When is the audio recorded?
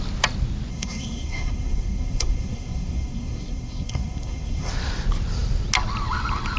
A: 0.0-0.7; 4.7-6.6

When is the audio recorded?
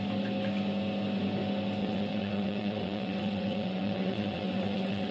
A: 0.0-1.8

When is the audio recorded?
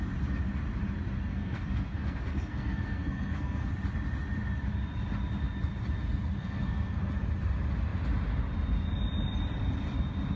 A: 0.0-1.3; 3.7-6.4; 7.0-10.4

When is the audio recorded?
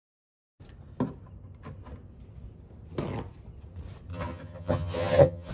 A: 0.0-4.1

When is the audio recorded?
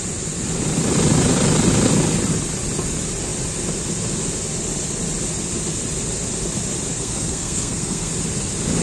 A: 0.0-6.9; 8.1-8.8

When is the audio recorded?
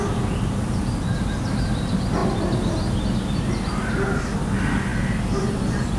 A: 0.0-6.0